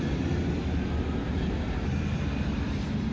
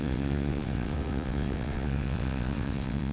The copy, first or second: second